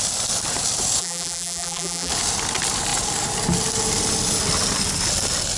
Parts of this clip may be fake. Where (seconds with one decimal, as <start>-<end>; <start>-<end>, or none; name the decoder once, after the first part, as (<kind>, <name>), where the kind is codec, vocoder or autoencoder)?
1.0-2.1 (vocoder, BigVGAN v2)